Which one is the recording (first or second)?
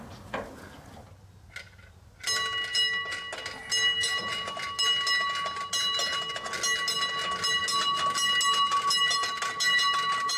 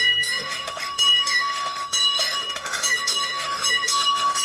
first